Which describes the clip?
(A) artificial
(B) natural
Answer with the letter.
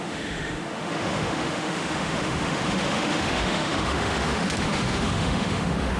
A